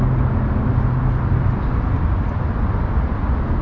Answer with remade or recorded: recorded